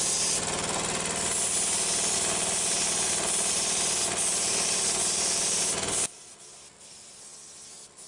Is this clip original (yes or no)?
yes